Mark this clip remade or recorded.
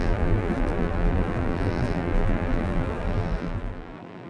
remade